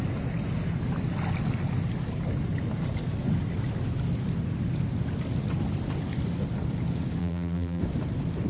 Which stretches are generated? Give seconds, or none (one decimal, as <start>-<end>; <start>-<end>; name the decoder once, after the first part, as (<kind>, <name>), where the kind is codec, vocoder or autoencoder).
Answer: 7.2-7.8 (vocoder, BigVGAN v2)